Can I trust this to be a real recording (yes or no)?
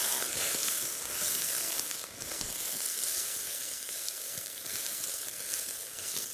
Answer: no